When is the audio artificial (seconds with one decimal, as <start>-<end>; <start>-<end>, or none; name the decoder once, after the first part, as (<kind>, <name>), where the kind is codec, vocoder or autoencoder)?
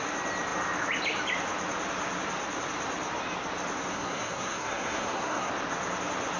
3.9-5.5 (codec, SNAC)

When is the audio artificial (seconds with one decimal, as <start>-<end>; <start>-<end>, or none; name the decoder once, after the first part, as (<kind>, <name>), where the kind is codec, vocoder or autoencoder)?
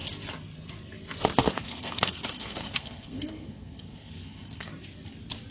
1.4-4.7 (codec, SNAC)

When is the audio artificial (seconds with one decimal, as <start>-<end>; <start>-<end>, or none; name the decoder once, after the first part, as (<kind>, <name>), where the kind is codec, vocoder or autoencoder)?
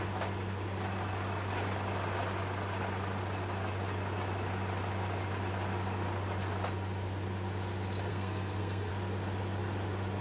8.1-8.9 (codec, SNAC)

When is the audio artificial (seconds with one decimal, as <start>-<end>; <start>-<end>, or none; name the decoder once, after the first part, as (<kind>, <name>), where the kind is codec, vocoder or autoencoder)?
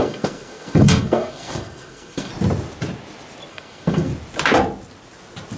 0.0-2.3 (codec, SNAC); 3.5-4.1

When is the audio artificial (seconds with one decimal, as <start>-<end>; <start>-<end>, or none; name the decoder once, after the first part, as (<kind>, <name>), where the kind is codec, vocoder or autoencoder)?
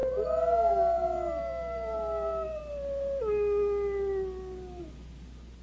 none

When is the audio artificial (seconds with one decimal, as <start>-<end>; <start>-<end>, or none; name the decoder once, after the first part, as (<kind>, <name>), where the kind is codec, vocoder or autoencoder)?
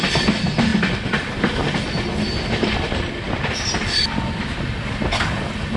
none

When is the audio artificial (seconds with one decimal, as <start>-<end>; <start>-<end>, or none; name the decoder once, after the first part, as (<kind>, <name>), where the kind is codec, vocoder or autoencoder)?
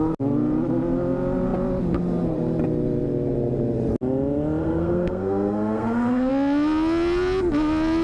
4.6-6.3 (codec, SNAC)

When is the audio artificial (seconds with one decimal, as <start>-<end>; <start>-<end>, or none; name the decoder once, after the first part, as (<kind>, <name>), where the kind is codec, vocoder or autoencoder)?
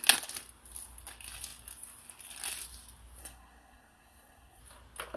3.2-4.6 (codec, SNAC)